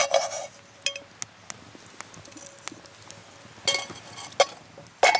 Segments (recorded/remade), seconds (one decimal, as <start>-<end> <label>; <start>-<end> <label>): 0.0-5.2 recorded